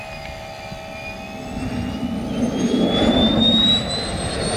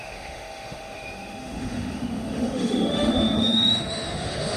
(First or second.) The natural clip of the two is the first